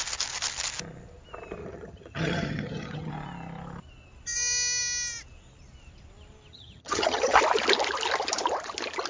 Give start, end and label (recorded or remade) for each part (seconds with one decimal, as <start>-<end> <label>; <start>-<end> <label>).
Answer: 0.0-1.6 recorded; 1.6-3.1 remade; 3.1-6.5 recorded; 6.5-7.4 remade; 7.4-9.1 recorded